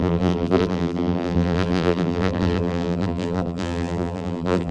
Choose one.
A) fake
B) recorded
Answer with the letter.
A